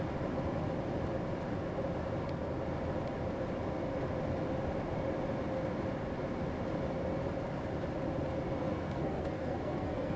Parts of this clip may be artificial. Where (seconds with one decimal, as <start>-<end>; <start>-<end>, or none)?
8.6-10.2